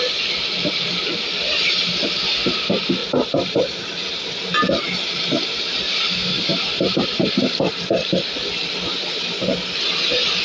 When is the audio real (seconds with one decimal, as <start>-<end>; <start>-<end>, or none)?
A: 0.0-3.0; 4.3-6.5; 8.1-10.4